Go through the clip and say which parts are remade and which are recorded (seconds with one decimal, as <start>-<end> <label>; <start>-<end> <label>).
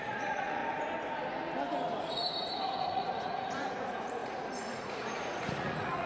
0.0-0.6 remade; 0.6-2.0 recorded; 2.0-6.1 remade